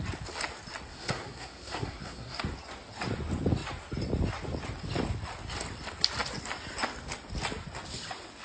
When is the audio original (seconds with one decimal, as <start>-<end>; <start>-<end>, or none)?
0.0-0.9; 2.4-8.4